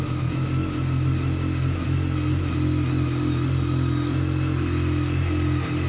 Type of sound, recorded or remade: recorded